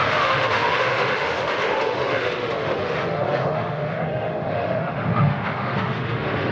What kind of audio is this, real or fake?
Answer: fake